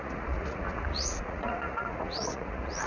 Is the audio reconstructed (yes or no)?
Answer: yes